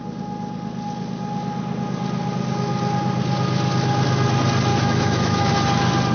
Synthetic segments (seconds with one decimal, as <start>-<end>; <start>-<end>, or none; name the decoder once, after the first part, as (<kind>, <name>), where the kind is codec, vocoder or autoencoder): 4.7-5.5 (autoencoder, DAC-VAE)